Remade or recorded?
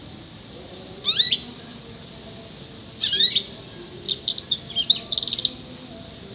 recorded